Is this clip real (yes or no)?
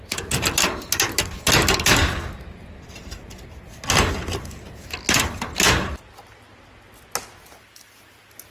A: yes